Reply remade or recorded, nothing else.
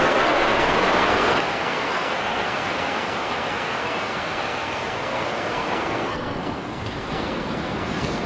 remade